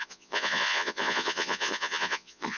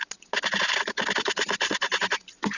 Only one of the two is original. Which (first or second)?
second